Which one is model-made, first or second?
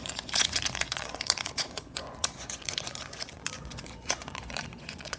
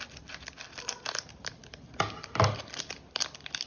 first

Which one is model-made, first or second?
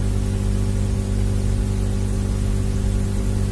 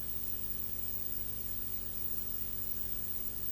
second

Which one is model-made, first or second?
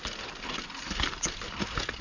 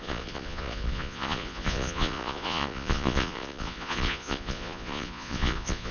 second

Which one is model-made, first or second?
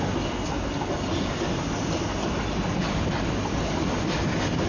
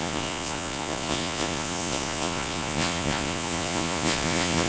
second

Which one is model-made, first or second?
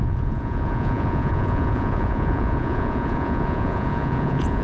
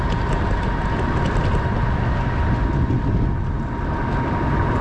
first